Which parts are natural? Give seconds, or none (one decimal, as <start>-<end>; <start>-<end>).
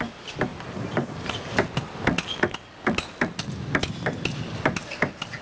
0.0-5.4